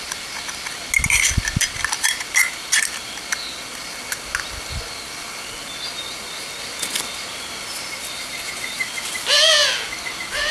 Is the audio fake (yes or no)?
no